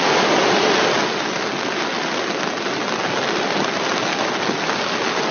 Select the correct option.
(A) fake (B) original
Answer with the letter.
B